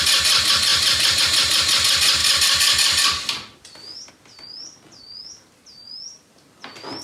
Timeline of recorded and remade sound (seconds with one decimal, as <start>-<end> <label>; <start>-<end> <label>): 0.0-7.0 recorded